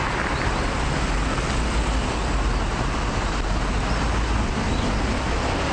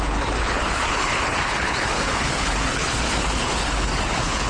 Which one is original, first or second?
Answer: first